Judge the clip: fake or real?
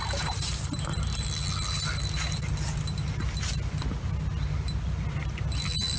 real